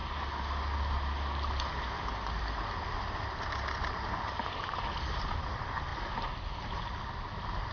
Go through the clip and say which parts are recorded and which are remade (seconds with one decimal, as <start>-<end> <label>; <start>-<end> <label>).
0.0-7.7 recorded